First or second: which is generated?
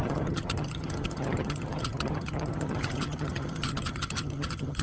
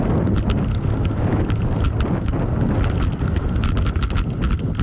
first